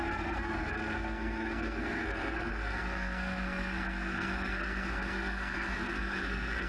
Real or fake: fake